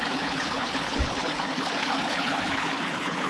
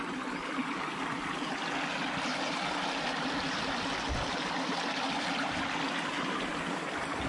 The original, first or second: second